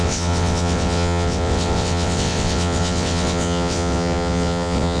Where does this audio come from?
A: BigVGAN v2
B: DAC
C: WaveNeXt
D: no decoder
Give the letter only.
C